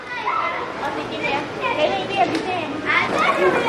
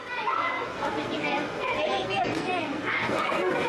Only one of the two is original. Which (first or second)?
first